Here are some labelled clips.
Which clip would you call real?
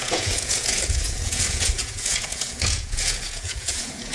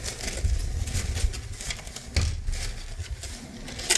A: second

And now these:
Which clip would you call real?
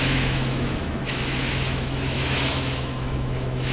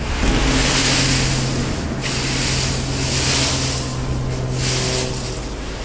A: second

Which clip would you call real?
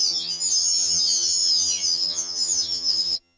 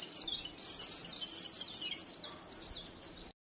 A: second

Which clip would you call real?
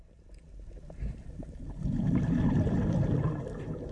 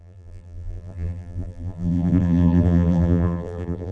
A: first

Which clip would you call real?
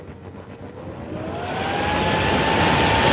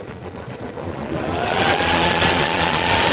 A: first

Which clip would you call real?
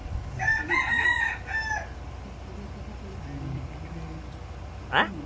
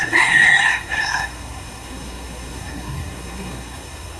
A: first